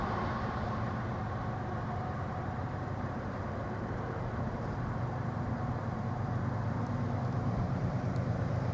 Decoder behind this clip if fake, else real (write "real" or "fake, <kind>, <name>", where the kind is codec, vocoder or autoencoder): fake, vocoder, BigVGAN v2